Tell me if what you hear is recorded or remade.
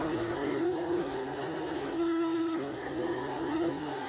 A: remade